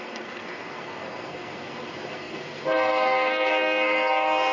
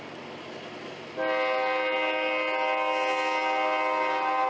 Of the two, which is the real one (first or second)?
second